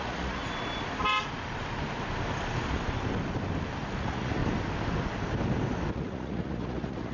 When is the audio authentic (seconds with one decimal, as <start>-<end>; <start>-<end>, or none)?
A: 0.4-4.0; 4.4-5.9